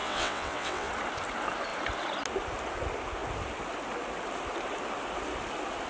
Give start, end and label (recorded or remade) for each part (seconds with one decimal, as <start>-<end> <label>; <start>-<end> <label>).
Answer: 0.0-0.9 remade; 0.9-5.9 recorded